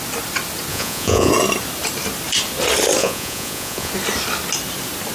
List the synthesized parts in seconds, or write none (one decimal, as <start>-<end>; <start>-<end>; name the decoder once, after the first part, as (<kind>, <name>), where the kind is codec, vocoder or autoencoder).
0.7-1.3 (vocoder, Vocos); 3.0-3.9